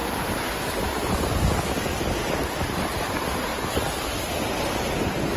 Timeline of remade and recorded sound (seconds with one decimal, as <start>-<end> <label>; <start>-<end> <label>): 0.0-2.4 remade; 2.4-3.5 recorded; 3.5-4.3 remade; 4.3-5.4 recorded